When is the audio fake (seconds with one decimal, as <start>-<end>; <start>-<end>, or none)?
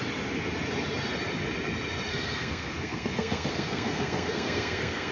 2.1-5.1